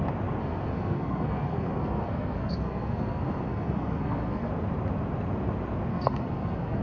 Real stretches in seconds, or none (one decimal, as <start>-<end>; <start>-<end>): 0.0-0.4; 4.5-5.9